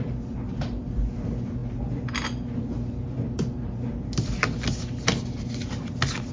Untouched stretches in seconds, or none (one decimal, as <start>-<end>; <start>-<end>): 0.0-6.3